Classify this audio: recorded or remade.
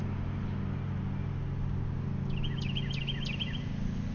recorded